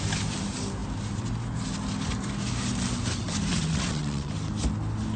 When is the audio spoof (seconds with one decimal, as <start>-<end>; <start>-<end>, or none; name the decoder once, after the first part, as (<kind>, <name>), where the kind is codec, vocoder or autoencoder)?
3.5-4.3 (vocoder, WaveNeXt)